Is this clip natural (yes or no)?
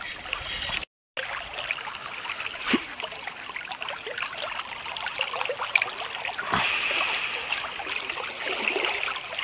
yes